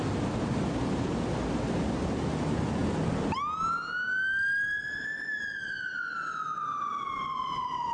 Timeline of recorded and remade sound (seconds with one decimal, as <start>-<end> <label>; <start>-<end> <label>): 0.0-7.9 recorded

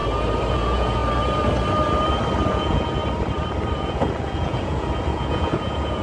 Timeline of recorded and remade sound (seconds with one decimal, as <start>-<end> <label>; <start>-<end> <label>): 0.0-0.5 recorded; 0.5-1.0 remade; 1.0-2.5 recorded; 2.5-3.0 remade; 3.0-3.8 recorded; 3.8-6.0 remade